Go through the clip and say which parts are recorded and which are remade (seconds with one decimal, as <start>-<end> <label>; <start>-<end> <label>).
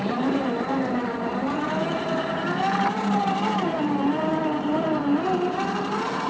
0.0-4.3 remade; 4.3-5.0 recorded; 5.0-6.3 remade